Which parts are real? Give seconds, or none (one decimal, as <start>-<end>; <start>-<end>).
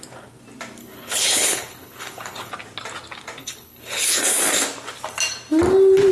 0.0-0.8; 2.5-3.4; 4.2-6.1